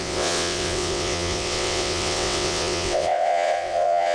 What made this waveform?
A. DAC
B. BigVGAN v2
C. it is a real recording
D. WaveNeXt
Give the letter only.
D